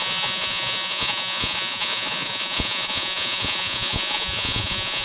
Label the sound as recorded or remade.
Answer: remade